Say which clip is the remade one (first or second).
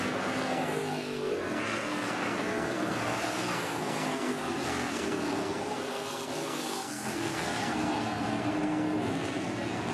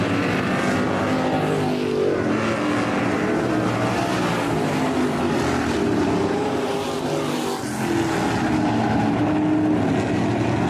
first